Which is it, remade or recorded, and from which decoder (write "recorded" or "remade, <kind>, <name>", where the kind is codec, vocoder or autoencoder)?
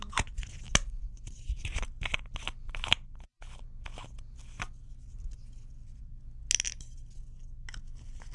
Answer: recorded